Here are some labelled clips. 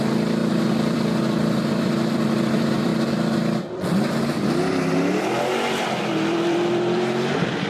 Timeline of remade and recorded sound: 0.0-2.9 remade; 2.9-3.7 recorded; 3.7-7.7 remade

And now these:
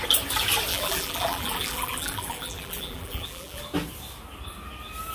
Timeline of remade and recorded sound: 0.0-0.7 recorded; 0.7-3.6 remade; 3.6-5.1 recorded

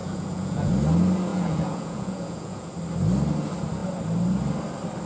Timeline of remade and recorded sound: 0.0-0.7 remade; 0.7-1.3 recorded; 1.3-2.7 remade; 2.7-5.1 recorded